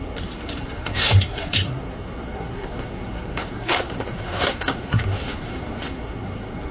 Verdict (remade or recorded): remade